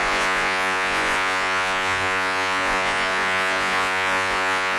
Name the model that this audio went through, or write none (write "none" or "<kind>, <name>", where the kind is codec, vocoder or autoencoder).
vocoder, Vocos